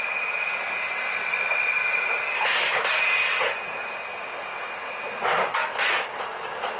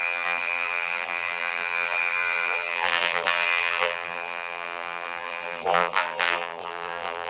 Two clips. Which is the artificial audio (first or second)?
second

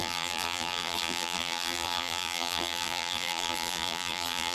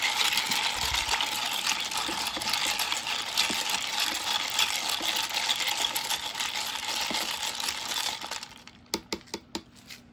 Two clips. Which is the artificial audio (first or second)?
first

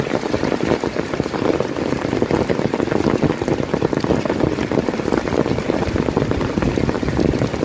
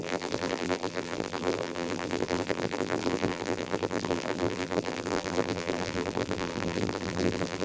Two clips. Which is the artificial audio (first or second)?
second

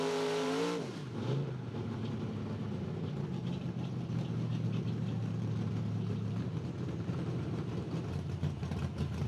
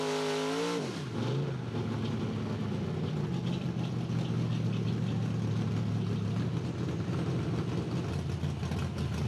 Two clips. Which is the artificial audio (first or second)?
first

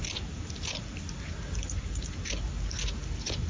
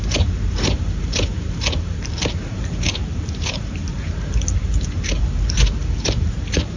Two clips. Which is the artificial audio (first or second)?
second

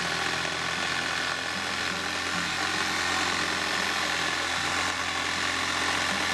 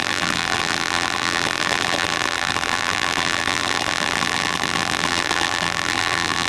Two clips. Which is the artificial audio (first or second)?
second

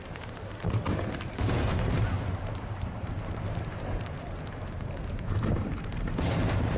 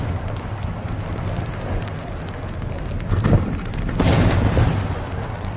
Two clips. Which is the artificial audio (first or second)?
first